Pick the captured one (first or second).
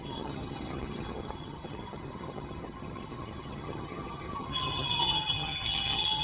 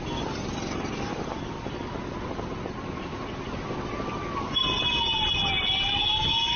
second